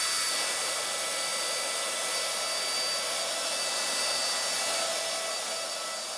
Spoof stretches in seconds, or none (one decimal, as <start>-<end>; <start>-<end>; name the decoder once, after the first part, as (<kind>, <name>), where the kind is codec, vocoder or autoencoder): none